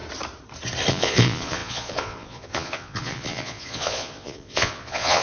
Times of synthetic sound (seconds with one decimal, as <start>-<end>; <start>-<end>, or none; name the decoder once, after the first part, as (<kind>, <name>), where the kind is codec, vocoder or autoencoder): 0.9-5.2 (vocoder, Vocos)